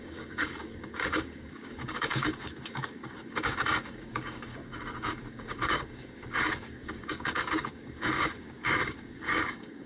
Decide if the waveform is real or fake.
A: fake